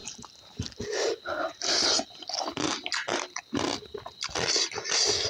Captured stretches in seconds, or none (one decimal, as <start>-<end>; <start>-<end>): 0.0-5.3